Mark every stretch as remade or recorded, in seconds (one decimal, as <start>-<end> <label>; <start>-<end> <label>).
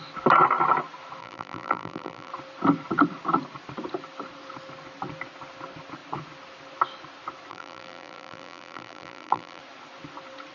0.0-1.2 recorded; 1.2-2.3 remade; 2.3-7.5 recorded; 7.5-9.6 remade; 9.6-10.5 recorded